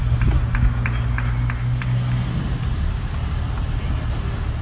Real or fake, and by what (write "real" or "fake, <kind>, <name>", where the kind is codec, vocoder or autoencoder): real